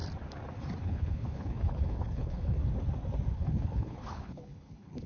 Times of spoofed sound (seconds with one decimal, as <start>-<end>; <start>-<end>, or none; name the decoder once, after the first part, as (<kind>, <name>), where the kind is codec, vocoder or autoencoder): 0.8-2.6 (codec, HILCodec); 3.3-5.1

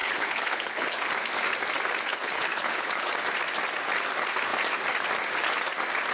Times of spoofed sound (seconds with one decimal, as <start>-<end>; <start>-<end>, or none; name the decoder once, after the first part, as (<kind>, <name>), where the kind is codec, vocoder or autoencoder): 0.0-1.1 (codec, HILCodec); 2.1-3.1

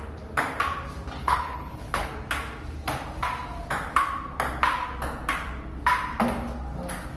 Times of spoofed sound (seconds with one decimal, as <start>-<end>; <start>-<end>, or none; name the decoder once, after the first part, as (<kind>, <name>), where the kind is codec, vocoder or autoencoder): 1.2-2.1 (codec, HILCodec)

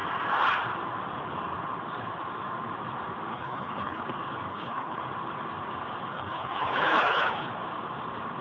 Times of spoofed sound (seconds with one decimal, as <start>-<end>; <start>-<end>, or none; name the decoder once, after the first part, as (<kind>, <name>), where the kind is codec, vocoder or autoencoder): 3.3-4.0 (codec, HILCodec); 4.5-5.0; 6.1-7.5